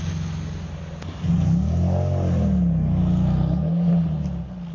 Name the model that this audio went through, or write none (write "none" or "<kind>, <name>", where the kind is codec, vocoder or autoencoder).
none